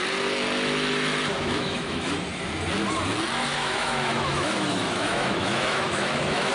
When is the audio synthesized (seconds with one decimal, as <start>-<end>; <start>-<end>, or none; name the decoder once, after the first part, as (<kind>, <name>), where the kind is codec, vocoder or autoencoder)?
1.3-2.1 (autoencoder, DAC-VAE); 3.5-6.5

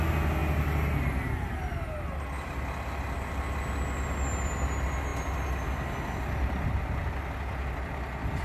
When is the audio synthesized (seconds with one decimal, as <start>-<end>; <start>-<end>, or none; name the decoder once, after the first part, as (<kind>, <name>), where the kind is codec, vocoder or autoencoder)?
none

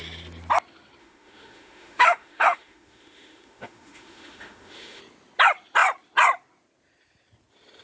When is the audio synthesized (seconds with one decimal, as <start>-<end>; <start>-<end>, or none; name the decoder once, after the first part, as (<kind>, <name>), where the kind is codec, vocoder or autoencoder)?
1.0-5.0 (autoencoder, DAC-VAE)

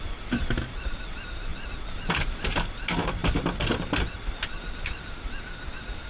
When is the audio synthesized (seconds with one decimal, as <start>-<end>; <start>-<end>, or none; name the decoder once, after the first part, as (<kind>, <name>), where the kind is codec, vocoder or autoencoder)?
none

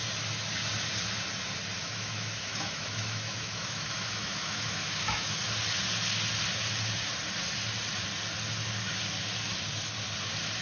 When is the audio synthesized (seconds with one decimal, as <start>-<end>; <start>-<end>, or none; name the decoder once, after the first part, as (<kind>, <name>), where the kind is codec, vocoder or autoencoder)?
1.8-5.4 (autoencoder, DAC-VAE)

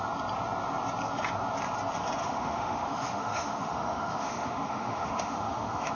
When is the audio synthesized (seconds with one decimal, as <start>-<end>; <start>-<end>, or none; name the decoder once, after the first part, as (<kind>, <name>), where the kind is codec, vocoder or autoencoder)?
2.2-5.9 (autoencoder, DAC-VAE)

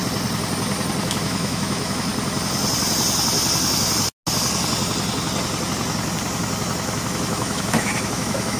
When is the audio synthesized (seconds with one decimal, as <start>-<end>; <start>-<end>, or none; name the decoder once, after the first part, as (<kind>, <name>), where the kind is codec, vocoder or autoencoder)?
1.0-2.1 (autoencoder, DAC-VAE); 7.1-8.6

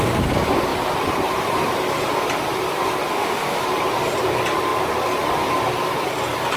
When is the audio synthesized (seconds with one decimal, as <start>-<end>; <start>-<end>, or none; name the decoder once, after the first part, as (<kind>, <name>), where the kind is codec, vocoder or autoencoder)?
3.1-3.6 (autoencoder, DAC-VAE)